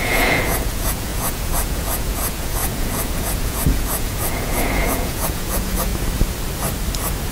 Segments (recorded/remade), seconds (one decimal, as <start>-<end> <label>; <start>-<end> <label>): 0.0-5.9 remade; 5.9-7.3 recorded